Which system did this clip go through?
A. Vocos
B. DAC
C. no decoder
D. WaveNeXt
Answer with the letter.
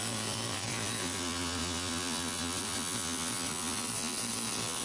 A